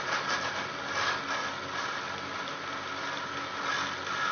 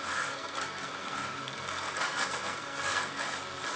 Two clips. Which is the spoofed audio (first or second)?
second